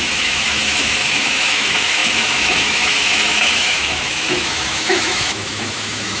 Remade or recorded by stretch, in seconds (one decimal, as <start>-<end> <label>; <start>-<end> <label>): 0.0-6.2 remade